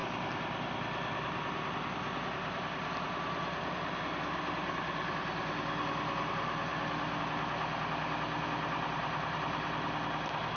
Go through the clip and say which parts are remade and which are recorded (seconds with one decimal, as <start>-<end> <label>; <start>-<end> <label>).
0.0-10.6 recorded